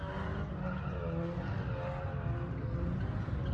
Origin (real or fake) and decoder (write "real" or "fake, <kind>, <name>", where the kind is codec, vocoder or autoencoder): real